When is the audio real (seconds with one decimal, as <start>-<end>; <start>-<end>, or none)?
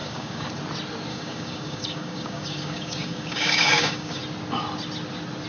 0.5-1.1; 4.2-5.5